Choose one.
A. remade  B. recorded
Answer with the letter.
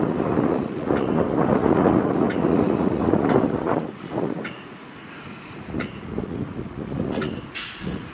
A